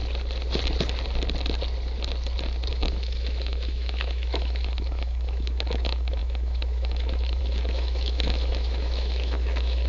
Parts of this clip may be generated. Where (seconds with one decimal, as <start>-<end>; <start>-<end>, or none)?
2.7-9.9